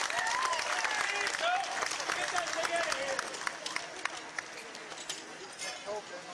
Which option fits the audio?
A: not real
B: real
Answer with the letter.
B